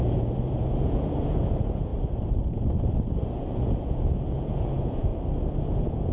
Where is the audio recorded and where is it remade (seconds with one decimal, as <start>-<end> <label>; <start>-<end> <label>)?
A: 0.0-1.9 remade; 1.9-3.3 recorded; 3.3-5.1 remade; 5.1-5.6 recorded; 5.6-6.1 remade